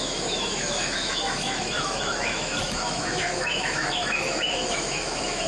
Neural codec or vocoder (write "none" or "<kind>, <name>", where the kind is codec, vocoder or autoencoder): autoencoder, DAC-VAE